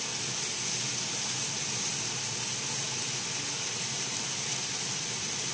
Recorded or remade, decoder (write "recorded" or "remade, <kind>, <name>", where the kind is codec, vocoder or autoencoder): recorded